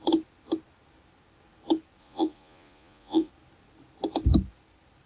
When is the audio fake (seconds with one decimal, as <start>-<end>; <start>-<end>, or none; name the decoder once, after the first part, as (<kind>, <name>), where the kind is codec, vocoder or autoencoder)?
2.0-3.3 (vocoder, Vocos)